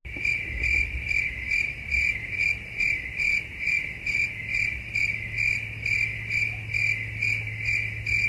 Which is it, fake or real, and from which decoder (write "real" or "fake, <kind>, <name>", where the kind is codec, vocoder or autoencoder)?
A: real